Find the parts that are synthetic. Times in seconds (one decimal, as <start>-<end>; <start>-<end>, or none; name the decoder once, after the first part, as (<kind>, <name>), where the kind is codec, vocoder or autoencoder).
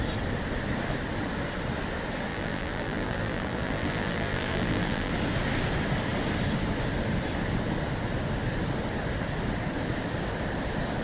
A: 2.3-5.1 (vocoder, BigVGAN v2)